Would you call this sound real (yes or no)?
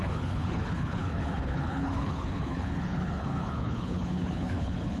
no